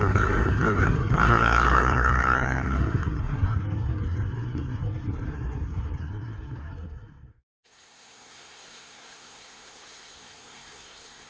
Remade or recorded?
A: remade